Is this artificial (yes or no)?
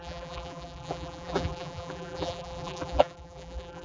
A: yes